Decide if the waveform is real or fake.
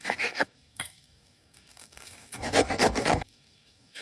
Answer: fake